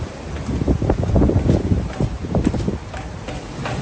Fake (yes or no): no